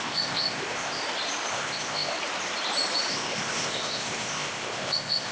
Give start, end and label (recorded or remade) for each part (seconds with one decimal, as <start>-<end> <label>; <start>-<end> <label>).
0.0-1.0 remade; 1.0-1.5 recorded; 1.5-2.1 remade; 2.1-3.1 recorded; 3.1-5.3 remade